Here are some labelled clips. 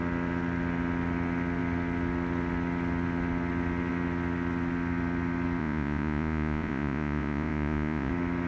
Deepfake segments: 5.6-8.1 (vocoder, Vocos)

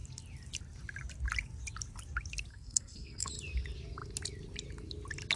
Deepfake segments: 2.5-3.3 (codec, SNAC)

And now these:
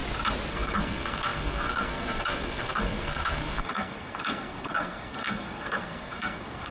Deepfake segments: 0.5-6.7 (codec, SNAC)

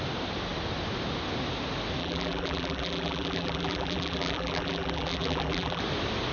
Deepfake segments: 2.0-5.8 (vocoder, BigVGAN v2)